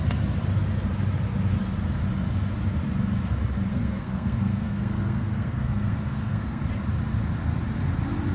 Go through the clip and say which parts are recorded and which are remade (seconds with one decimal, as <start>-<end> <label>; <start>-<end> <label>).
0.0-3.7 recorded; 3.7-6.6 remade; 6.6-8.3 recorded